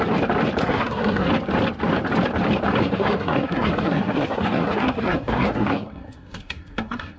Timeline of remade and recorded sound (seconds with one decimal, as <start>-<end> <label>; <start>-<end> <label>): 0.0-0.6 recorded; 0.6-1.3 remade; 1.3-2.8 recorded; 2.8-7.2 remade